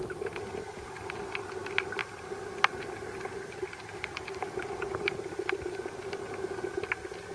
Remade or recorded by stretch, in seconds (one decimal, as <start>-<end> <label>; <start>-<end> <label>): 0.0-2.0 recorded; 2.0-6.4 remade; 6.4-7.3 recorded